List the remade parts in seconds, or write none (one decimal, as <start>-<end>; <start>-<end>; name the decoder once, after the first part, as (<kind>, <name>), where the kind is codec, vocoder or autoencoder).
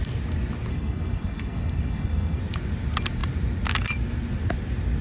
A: 0.7-2.4 (codec, SNAC)